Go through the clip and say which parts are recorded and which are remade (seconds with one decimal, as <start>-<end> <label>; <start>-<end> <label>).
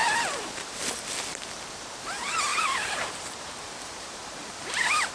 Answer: 0.0-0.7 remade; 0.7-2.5 recorded; 2.5-4.5 remade; 4.5-5.1 recorded